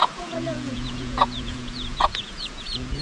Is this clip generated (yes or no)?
yes